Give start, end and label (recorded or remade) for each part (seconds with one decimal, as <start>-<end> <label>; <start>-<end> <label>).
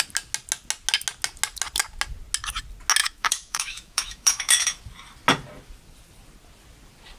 0.0-3.0 recorded; 3.0-4.8 remade; 4.8-7.2 recorded